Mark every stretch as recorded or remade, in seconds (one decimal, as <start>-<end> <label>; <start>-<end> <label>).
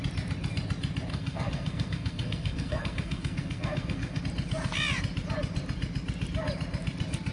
0.0-1.1 recorded; 1.1-4.2 remade; 4.2-7.3 recorded